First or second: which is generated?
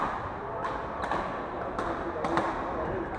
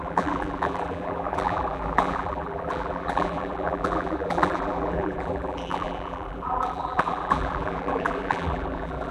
second